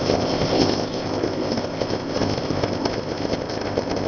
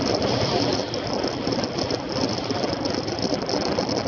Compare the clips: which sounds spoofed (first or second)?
first